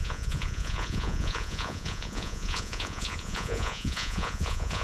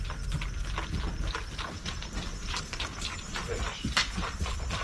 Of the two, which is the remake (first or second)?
first